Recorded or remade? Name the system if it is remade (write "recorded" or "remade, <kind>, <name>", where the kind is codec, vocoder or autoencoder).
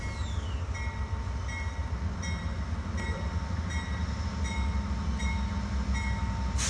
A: recorded